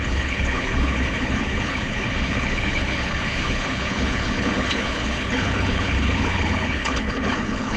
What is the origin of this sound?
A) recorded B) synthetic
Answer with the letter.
B